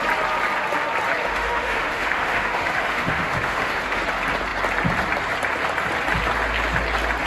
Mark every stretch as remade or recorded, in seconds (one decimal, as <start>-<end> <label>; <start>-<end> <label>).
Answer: 0.0-1.2 recorded; 1.2-4.0 remade; 4.0-7.3 recorded